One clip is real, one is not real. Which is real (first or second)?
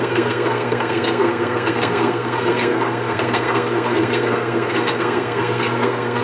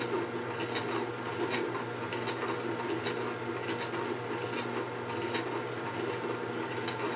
second